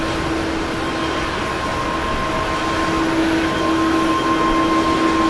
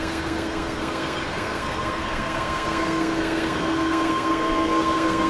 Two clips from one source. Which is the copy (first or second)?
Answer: second